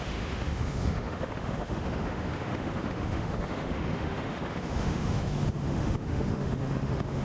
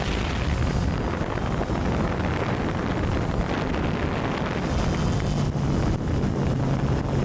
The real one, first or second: second